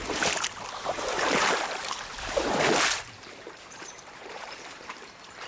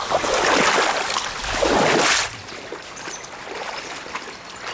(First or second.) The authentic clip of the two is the second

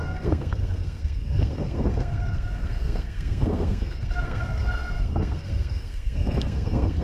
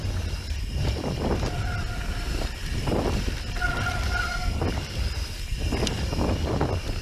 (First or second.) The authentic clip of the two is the second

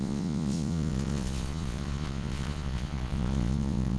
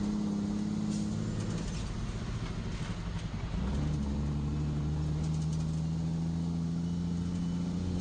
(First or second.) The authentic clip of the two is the second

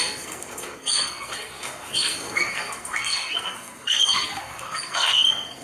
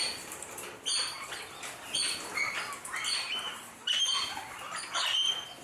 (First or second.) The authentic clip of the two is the second